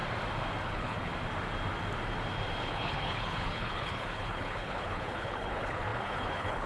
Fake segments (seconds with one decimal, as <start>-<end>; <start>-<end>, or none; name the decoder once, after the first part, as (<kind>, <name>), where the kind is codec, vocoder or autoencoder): 0.6-1.1 (codec, HILCodec); 2.6-6.7